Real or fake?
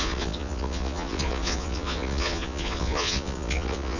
fake